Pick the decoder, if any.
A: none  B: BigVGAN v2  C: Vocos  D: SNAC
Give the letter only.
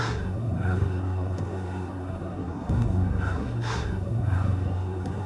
D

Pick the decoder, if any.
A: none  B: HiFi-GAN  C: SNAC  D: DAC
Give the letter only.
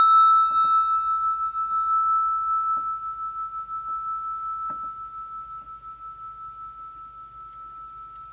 A